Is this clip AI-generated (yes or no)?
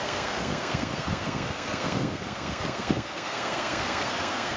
yes